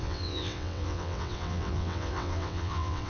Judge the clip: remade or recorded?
remade